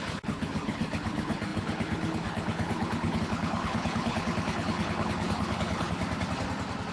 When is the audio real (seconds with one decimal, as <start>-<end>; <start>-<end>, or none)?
6.0-6.9